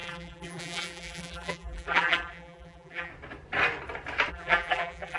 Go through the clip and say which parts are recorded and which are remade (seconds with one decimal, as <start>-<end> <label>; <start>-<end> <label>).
0.0-3.1 remade; 3.1-4.3 recorded; 4.3-5.2 remade